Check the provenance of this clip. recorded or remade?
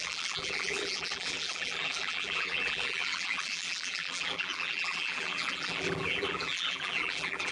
remade